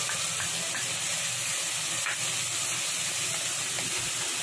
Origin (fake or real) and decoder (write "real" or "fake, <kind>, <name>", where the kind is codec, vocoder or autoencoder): real